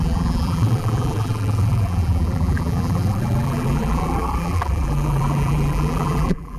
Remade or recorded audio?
remade